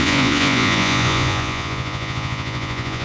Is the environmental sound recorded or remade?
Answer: remade